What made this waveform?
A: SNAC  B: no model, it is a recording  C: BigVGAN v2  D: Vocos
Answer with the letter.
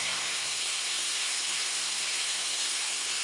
A